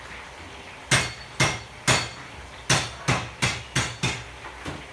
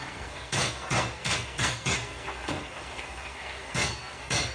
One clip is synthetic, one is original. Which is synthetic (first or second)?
second